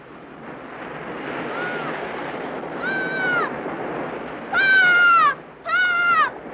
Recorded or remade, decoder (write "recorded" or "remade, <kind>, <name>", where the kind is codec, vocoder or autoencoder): recorded